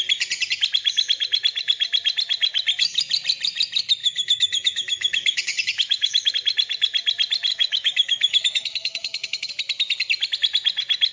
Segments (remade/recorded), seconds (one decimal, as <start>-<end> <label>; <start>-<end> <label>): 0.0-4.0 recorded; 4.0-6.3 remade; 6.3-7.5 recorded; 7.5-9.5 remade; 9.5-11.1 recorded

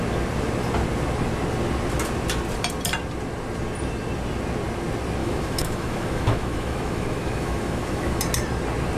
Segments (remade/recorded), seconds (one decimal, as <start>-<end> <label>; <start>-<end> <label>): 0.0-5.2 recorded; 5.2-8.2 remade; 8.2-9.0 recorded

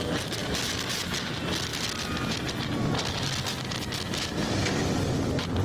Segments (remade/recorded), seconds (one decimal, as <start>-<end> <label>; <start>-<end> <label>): 0.0-5.6 recorded

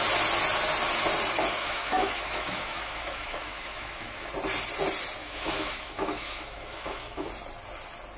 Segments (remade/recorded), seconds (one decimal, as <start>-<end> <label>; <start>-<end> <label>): 0.0-1.6 recorded; 1.6-4.3 remade; 4.3-5.2 recorded; 5.2-7.3 remade; 7.3-8.2 recorded

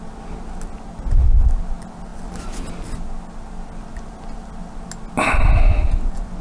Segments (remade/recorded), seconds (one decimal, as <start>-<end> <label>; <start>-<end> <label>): 0.0-6.4 recorded